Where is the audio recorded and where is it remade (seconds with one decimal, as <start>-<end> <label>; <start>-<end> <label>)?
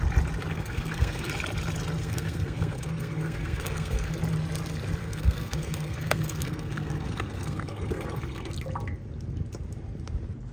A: 0.0-0.5 recorded; 0.5-1.3 remade; 1.3-2.0 recorded; 2.0-4.1 remade; 4.1-5.0 recorded; 5.0-8.5 remade; 8.5-10.5 recorded